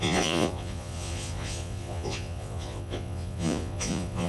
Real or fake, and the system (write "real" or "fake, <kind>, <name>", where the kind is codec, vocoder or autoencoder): fake, vocoder, Vocos